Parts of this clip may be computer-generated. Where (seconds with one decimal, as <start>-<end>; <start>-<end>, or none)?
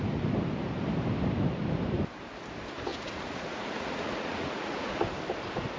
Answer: 2.9-5.0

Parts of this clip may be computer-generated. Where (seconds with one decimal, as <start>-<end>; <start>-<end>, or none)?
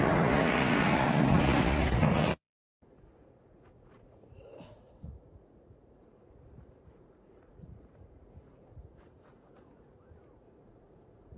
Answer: 0.0-11.4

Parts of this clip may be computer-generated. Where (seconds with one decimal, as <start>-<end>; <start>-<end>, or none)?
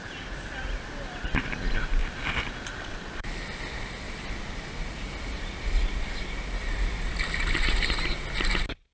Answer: none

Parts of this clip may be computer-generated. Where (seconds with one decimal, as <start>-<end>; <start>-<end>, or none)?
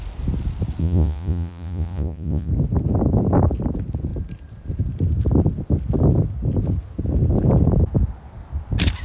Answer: 0.8-2.5